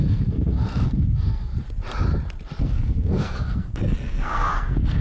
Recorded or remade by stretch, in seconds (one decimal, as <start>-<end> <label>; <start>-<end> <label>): 0.0-1.5 remade; 1.5-2.6 recorded; 2.6-5.0 remade